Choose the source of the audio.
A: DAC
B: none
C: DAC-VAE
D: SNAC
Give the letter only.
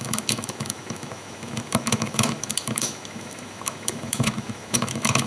C